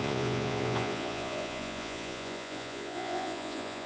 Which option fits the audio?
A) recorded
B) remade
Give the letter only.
B